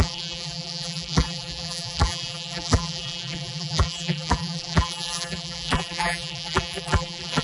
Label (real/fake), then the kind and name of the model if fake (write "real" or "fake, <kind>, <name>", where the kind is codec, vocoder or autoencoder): fake, vocoder, BigVGAN v2